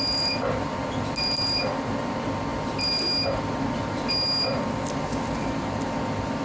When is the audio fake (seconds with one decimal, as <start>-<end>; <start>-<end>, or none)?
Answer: none

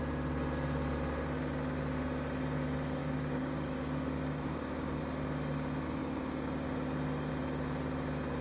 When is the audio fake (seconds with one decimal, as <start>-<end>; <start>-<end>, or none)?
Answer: 3.0-5.0

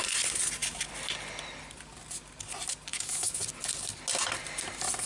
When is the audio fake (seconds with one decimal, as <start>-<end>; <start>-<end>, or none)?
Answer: 2.9-3.4

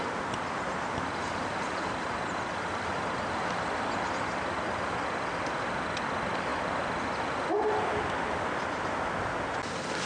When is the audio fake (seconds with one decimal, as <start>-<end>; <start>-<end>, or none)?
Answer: none

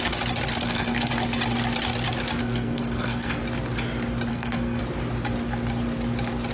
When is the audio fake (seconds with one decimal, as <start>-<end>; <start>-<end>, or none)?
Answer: 0.5-1.1; 2.4-3.4; 4.3-4.8